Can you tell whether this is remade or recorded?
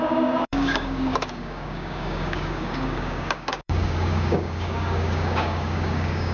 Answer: remade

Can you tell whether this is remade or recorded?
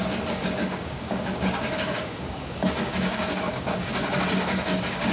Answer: remade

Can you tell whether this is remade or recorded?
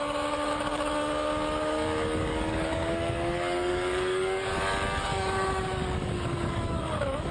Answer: remade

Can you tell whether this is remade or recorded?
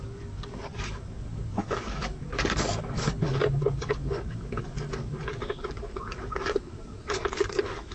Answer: remade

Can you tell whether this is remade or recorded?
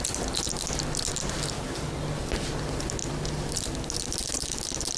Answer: recorded